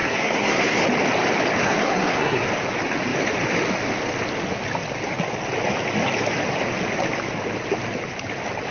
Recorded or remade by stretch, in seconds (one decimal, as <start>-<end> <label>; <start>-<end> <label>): 0.0-0.8 remade; 0.8-1.6 recorded; 1.6-2.5 remade; 2.5-8.7 recorded